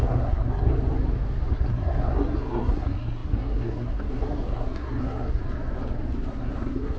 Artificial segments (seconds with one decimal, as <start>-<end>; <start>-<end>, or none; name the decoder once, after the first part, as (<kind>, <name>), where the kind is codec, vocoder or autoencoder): 0.0-0.7 (codec, SNAC); 1.5-5.4; 6.3-7.0